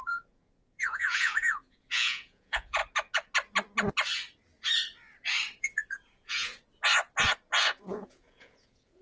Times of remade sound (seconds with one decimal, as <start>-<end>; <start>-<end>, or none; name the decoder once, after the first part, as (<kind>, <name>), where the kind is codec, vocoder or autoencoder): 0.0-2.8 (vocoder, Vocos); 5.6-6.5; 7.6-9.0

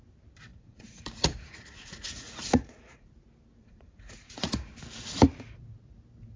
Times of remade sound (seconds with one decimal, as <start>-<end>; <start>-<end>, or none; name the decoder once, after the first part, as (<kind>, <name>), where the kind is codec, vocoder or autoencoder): 0.5-3.1 (vocoder, Vocos); 3.6-4.7

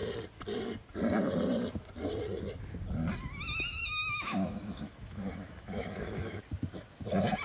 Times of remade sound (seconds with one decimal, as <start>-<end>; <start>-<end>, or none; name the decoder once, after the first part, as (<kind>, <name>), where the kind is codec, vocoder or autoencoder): 3.8-6.4 (autoencoder, DAC-VAE)